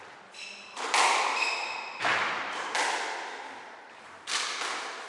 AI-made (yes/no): no